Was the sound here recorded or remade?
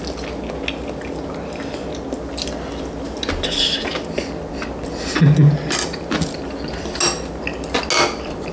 recorded